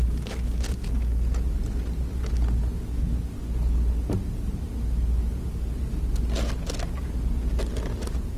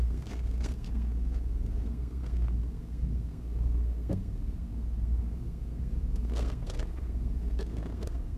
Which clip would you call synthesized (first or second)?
second